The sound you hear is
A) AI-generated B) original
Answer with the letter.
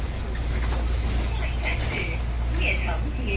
B